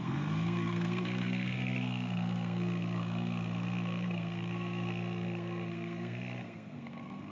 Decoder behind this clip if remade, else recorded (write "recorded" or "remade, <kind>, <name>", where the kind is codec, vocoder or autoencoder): remade, codec, SNAC